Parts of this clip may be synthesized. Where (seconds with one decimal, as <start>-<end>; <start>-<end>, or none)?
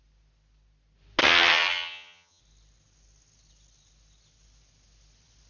1.2-2.4